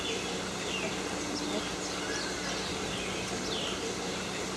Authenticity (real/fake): real